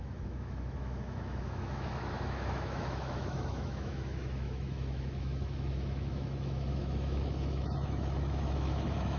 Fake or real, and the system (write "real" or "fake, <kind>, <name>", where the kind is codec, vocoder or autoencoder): fake, autoencoder, DAC-VAE